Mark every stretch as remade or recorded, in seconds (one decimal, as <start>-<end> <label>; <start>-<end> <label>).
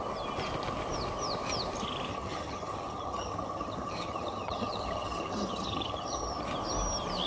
0.0-2.1 recorded; 2.1-6.5 remade; 6.5-7.3 recorded